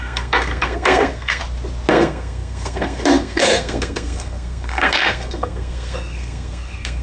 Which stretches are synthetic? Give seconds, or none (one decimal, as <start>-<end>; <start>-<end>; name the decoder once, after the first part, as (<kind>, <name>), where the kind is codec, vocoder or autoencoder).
0.0-1.4 (codec, SNAC); 1.9-7.0